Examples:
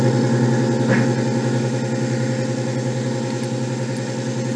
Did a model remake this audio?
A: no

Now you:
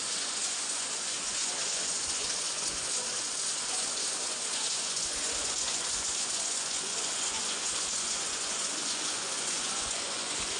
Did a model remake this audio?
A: yes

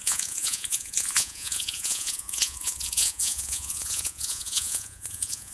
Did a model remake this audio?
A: yes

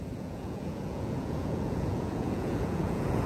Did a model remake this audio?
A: yes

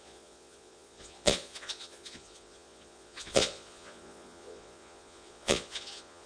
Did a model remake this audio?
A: yes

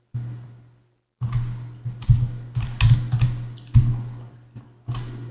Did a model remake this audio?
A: no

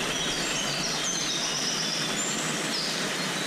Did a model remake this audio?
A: no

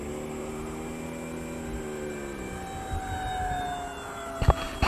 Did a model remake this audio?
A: no